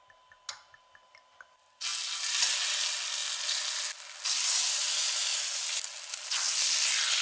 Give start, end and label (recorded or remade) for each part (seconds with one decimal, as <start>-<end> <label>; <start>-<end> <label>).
0.0-7.2 recorded